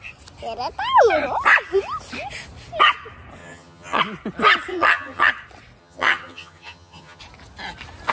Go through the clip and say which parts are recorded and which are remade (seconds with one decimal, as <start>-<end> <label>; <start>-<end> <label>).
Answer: 0.0-3.4 recorded; 3.4-4.0 remade; 4.0-4.7 recorded; 4.7-5.3 remade; 5.3-5.8 recorded; 5.8-7.2 remade; 7.2-8.1 recorded